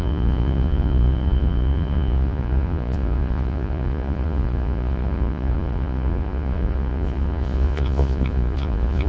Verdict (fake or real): fake